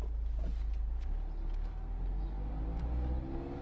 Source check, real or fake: real